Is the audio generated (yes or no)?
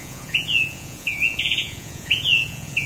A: yes